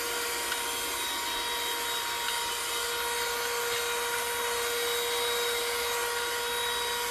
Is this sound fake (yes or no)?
no